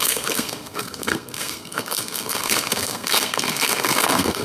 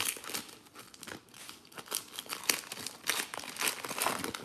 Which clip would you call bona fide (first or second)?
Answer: second